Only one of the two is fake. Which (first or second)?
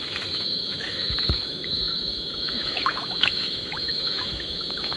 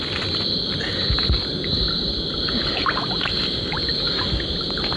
first